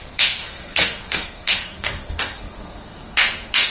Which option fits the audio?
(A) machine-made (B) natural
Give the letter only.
A